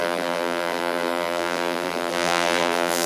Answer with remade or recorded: remade